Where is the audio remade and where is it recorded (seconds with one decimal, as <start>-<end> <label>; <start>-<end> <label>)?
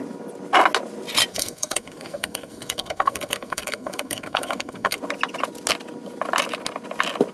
0.0-1.3 recorded; 1.3-5.0 remade; 5.0-7.3 recorded